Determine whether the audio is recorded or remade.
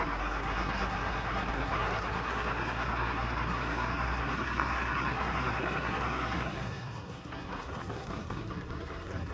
remade